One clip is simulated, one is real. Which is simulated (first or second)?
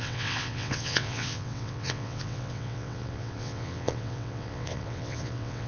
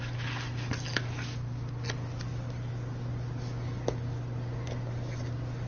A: first